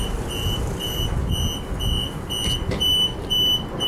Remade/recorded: recorded